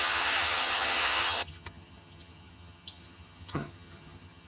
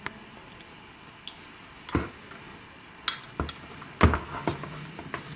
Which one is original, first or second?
second